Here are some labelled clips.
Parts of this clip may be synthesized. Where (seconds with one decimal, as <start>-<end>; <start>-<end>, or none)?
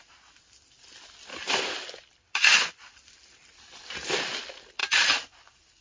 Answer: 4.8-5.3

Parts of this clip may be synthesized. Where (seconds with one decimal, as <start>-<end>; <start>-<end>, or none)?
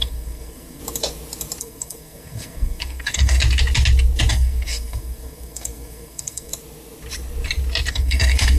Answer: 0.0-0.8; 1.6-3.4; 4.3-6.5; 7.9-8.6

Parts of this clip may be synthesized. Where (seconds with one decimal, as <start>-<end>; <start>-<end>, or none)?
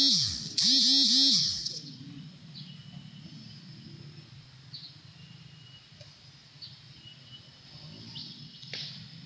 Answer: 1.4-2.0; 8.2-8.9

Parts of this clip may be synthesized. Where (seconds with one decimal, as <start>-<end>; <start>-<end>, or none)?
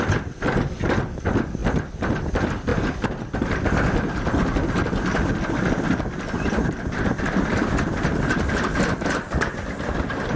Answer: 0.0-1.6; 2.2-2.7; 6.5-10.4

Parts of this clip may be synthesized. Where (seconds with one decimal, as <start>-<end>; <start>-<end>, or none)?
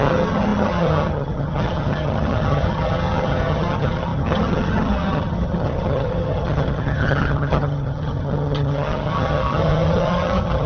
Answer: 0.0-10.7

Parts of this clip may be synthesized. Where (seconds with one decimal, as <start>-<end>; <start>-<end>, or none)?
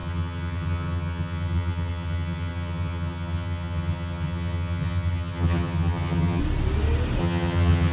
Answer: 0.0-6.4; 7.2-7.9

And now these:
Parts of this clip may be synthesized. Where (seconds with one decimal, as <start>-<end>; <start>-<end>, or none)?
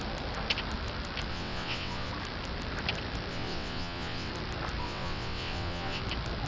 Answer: 1.3-2.1; 3.3-4.3; 4.8-6.0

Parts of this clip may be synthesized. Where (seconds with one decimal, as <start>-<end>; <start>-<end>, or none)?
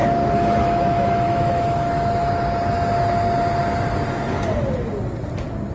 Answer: 0.0-2.3